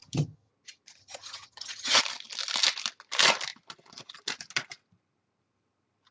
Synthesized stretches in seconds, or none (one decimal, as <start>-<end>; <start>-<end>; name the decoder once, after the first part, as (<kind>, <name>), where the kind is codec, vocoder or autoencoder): 0.0-0.5 (vocoder, HiFi-GAN); 1.0-2.0